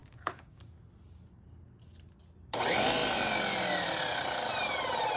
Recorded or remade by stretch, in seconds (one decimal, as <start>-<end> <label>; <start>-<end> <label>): 0.0-0.6 remade; 0.6-5.2 recorded